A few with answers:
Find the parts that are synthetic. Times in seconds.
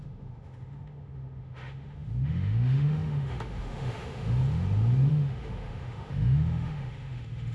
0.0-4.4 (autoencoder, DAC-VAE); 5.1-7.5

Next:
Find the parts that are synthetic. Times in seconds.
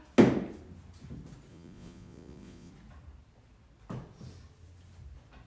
1.5-2.7 (vocoder, Vocos)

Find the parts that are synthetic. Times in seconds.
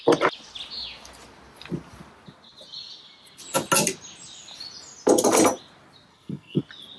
6.1-6.6 (codec, SNAC)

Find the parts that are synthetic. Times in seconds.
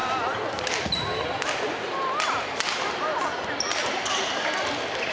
none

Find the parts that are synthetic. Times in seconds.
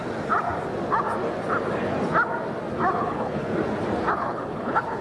3.0-3.5 (codec, HILCodec); 4.1-5.0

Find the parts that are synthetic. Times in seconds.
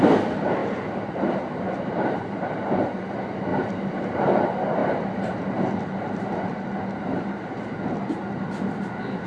0.6-2.6 (vocoder, BigVGAN v2); 3.5-4.3; 4.8-5.8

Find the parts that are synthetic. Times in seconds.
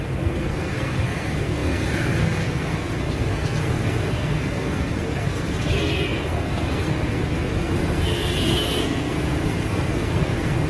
0.0-10.7 (codec, SNAC)